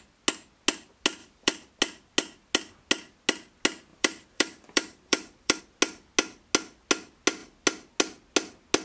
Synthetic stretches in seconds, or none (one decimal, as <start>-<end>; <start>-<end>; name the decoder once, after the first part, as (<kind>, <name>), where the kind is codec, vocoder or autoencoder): 1.2-1.7 (vocoder, BigVGAN v2); 3.9-5.6